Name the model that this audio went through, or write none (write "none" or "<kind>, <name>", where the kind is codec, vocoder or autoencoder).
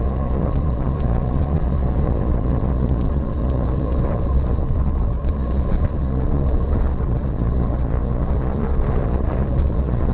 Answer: vocoder, Vocos